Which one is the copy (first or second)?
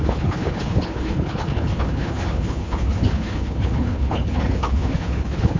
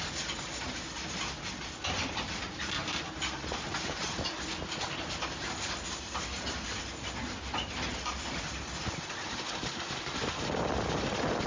first